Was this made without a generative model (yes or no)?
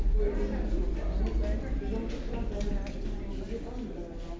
yes